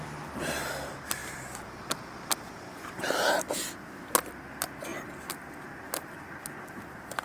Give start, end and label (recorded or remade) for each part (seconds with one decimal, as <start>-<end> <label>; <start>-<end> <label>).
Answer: 0.0-7.2 recorded